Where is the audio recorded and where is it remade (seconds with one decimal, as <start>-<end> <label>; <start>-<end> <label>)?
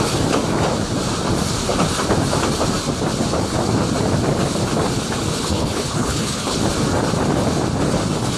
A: 0.0-5.4 recorded; 5.4-6.6 remade; 6.6-8.4 recorded